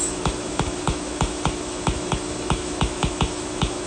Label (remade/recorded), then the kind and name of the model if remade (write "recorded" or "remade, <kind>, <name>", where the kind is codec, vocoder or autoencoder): remade, autoencoder, DAC-VAE